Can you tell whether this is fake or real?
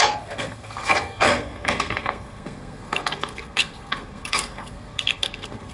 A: fake